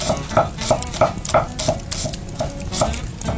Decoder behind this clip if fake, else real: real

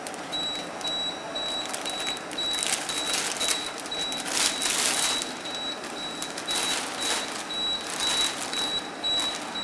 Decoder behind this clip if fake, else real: real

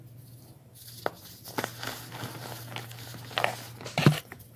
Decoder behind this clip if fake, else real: real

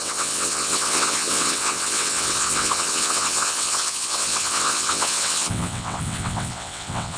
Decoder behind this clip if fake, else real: fake, vocoder, WaveNeXt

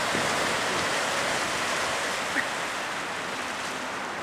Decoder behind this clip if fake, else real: real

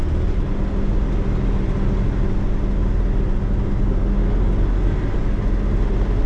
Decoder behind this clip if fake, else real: real